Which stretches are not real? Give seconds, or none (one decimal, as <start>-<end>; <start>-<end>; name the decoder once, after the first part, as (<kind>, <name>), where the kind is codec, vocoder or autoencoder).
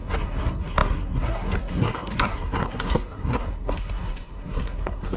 0.0-5.2 (codec, SNAC)